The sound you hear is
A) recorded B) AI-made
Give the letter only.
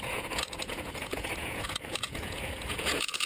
B